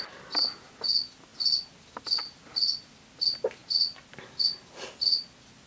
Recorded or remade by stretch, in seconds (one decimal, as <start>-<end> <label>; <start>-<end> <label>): 0.0-5.7 recorded